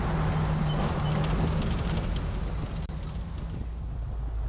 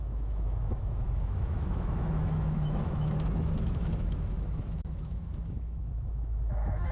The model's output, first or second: second